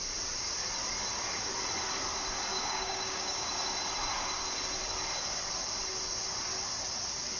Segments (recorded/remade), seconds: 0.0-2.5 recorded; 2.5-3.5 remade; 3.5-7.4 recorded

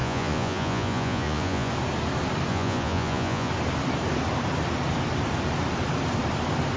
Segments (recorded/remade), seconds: 0.0-1.7 remade; 1.7-2.5 recorded; 2.5-3.5 remade; 3.5-6.8 recorded